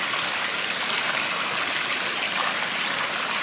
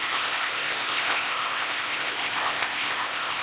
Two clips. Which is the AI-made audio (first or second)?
second